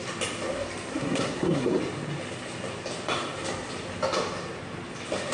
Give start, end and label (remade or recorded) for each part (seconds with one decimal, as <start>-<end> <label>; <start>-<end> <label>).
0.0-0.9 recorded; 0.9-1.8 remade; 1.8-5.3 recorded